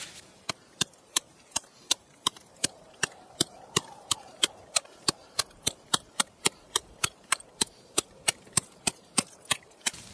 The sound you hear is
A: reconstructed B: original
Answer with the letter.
A